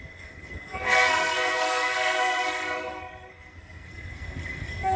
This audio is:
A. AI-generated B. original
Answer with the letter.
A